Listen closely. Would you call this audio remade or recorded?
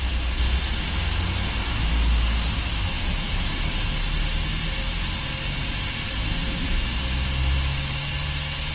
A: recorded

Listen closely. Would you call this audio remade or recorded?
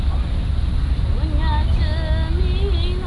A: recorded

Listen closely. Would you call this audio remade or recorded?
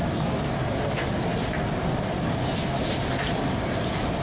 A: recorded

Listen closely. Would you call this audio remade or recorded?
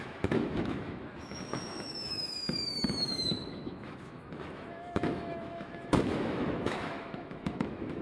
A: remade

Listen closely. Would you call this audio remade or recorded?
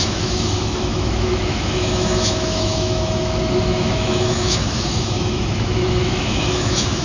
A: remade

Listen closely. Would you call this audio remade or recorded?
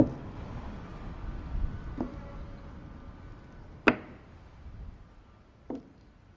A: recorded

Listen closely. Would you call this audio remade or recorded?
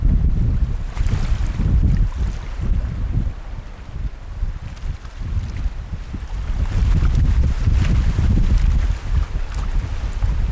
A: recorded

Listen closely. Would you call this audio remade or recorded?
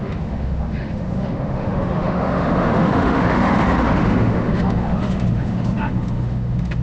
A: remade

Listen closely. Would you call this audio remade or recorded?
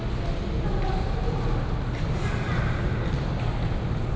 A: recorded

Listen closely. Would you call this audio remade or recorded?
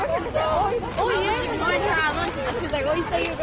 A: recorded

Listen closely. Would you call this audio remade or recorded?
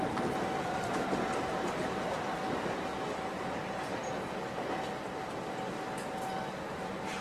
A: recorded